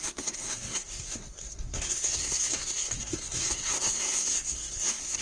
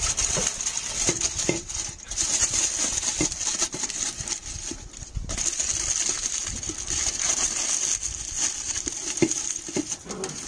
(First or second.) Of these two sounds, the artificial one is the first